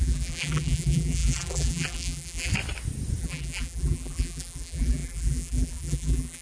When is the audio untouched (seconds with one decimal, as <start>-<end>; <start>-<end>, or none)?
2.5-3.2